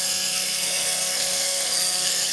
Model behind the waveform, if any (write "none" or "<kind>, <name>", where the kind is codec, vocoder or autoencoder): codec, SNAC